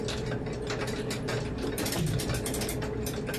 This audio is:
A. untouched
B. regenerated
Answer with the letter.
A